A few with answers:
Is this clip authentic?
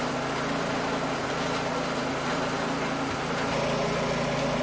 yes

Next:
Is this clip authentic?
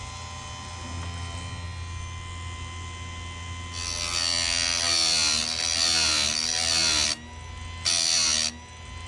yes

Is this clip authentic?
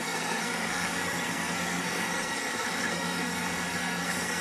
no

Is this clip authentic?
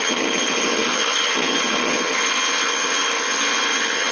no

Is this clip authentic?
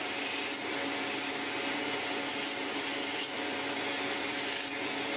yes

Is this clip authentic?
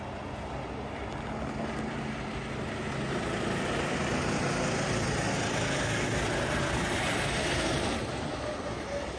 yes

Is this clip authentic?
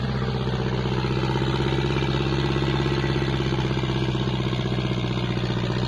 yes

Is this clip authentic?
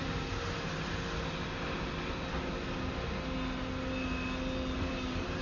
yes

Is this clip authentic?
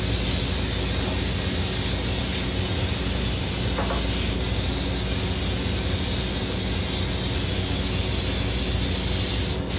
yes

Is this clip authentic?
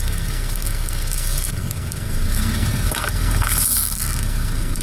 no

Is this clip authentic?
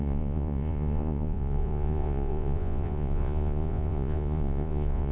no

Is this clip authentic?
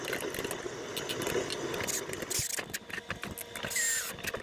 yes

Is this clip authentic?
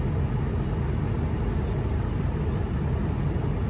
yes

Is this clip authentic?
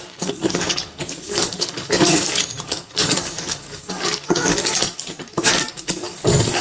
no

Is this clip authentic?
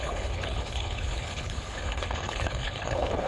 no